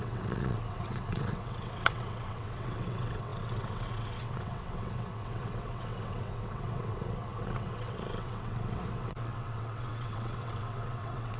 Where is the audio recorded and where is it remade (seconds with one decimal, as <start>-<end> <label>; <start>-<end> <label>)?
0.0-11.4 remade